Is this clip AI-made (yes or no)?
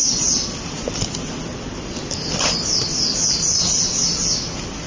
no